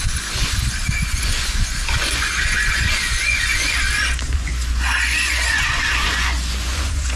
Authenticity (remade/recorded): remade